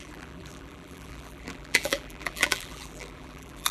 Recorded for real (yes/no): no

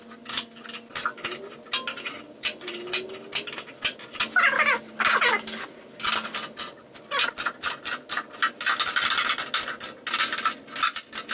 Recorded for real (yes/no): yes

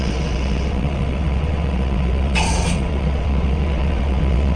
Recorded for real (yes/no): no